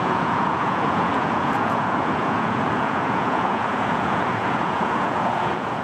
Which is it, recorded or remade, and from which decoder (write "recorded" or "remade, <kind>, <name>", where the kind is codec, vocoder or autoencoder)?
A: remade, vocoder, Vocos